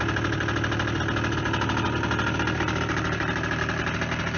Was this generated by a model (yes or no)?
no